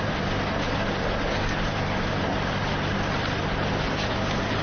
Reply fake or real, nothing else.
real